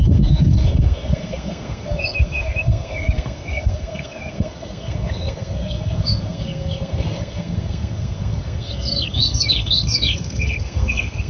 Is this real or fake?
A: fake